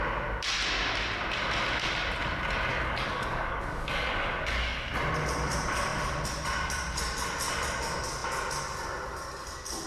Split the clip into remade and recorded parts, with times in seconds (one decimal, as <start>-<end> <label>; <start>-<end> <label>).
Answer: 0.0-2.7 recorded; 2.7-4.9 remade; 4.9-9.9 recorded